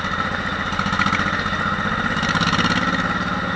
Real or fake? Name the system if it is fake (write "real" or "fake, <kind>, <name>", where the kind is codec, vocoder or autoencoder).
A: real